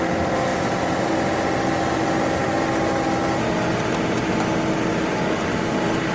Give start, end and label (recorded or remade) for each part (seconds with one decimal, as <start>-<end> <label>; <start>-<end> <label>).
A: 0.0-6.1 recorded